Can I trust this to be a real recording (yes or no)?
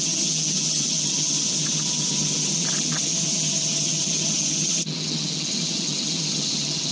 no